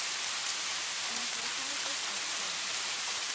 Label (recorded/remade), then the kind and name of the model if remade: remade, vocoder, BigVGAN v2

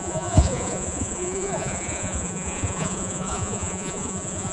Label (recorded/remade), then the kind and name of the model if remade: remade, vocoder, Vocos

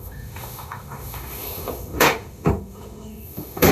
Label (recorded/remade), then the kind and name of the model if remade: remade, autoencoder, DAC-VAE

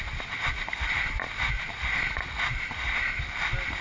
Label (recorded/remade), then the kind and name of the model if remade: recorded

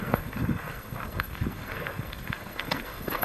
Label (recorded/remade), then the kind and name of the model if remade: remade, codec, SNAC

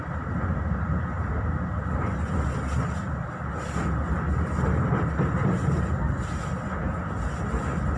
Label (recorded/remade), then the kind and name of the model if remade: recorded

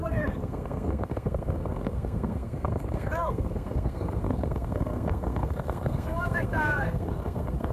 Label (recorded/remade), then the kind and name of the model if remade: remade, codec, SNAC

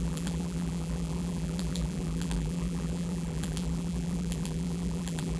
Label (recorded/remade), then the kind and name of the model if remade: remade, vocoder, BigVGAN v2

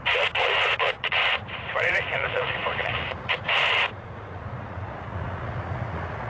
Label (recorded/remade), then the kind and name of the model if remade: remade, vocoder, Vocos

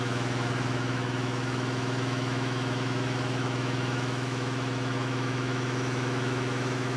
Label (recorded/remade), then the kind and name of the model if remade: remade, autoencoder, DAC-VAE